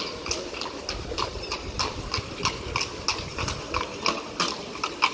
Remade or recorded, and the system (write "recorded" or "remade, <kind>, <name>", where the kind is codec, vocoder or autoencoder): recorded